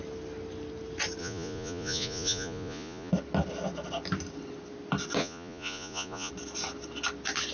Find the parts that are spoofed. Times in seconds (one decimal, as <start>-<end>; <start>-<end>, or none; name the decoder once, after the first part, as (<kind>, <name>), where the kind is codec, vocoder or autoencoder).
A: 1.2-3.1 (vocoder, Vocos); 5.2-6.3